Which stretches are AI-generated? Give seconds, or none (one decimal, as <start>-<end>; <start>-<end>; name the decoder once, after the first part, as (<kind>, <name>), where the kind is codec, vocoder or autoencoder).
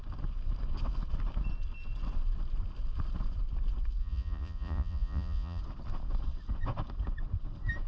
4.0-5.6 (vocoder, Vocos)